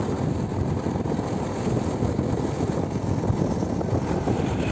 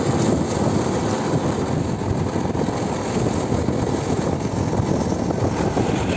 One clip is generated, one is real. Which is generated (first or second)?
first